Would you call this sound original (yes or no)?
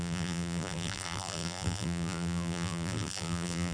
no